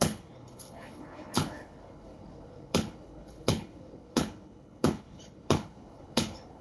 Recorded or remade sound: remade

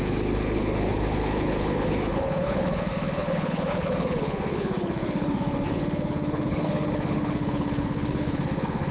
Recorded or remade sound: remade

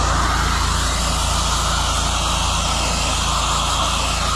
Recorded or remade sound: recorded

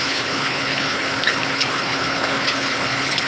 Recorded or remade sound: remade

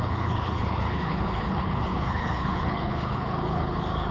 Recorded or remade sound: remade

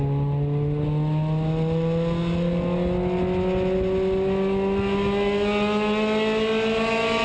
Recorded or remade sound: recorded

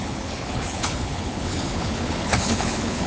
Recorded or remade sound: remade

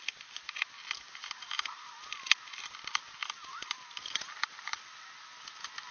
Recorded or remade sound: recorded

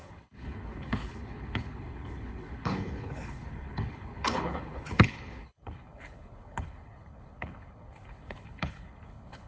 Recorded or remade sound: remade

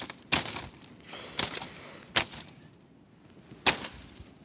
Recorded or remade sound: recorded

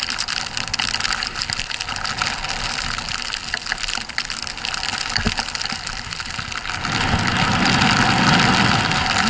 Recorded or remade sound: recorded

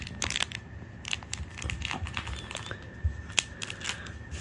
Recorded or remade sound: recorded